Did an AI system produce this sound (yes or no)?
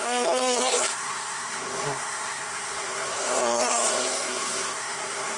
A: yes